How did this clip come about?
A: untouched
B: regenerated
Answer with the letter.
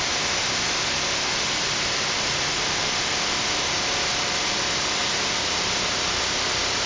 A